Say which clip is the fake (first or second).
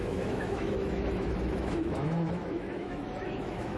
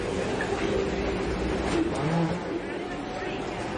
first